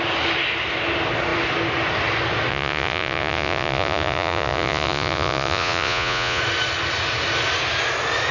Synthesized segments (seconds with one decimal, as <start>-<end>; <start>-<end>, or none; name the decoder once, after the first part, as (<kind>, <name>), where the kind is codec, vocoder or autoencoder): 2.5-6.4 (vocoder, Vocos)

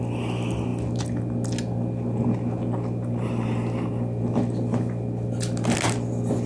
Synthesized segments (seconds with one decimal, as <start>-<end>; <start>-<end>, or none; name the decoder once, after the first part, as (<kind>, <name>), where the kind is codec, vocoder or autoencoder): none

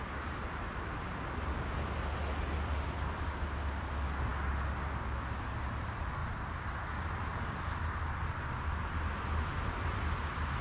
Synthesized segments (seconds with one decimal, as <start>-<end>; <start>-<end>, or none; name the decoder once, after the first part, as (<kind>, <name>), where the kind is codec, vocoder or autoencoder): none

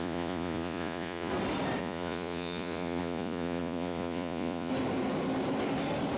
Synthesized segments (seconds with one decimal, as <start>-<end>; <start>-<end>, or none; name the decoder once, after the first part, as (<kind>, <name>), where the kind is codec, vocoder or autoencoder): 0.0-1.3 (vocoder, Vocos); 1.8-4.7

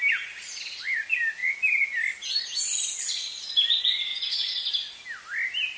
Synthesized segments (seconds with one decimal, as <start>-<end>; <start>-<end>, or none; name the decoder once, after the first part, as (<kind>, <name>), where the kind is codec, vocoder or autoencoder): 4.1-4.7 (vocoder, Vocos)